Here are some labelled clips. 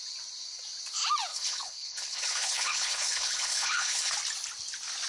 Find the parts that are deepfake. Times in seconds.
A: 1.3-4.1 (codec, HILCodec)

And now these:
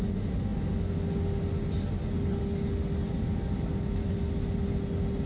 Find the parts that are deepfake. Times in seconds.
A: none

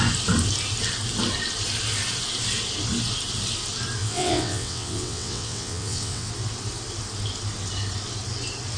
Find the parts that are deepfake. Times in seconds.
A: 4.0-6.3 (vocoder, WaveNeXt)

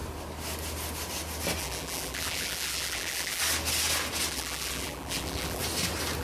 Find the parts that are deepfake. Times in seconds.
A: 1.6-3.4 (vocoder, BigVGAN v2); 4.3-5.6

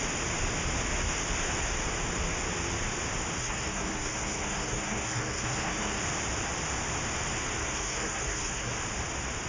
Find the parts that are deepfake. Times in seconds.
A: 3.4-6.0 (codec, SNAC); 7.6-8.7

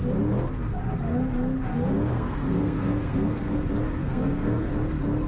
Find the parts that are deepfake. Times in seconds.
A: 2.1-3.6 (codec, SNAC); 4.0-4.7

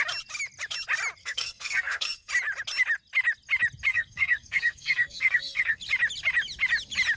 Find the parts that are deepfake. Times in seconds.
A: 1.2-2.3 (codec, SNAC); 3.9-5.8